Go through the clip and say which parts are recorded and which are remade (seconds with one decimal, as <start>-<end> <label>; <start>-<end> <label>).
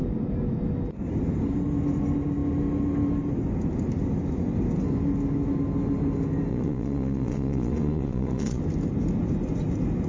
0.0-6.5 recorded; 6.5-8.6 remade; 8.6-10.1 recorded